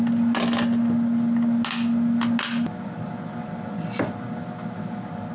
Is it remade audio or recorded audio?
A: recorded